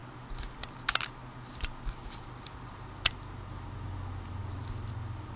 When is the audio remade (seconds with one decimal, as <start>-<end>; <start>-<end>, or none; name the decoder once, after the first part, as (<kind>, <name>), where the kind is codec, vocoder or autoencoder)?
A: none